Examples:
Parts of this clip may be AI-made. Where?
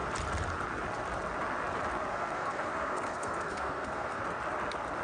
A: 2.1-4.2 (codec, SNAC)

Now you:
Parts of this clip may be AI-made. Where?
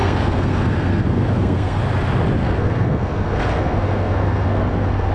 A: 0.0-1.8 (codec, SNAC); 2.4-5.1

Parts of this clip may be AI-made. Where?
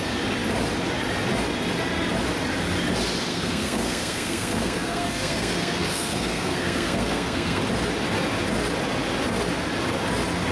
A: 3.3-7.6 (codec, SNAC)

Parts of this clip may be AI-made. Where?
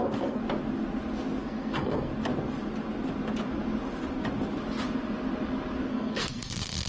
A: 0.0-0.4 (codec, SNAC); 1.4-2.1; 5.9-6.9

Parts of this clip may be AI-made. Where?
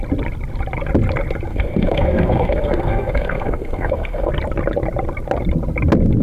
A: 1.5-4.3 (codec, SNAC)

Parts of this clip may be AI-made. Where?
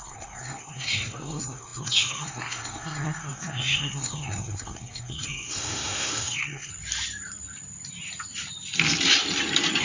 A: 0.0-6.7 (codec, SNAC)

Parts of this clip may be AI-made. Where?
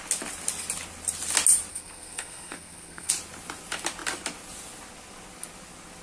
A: 1.7-3.1 (codec, SNAC)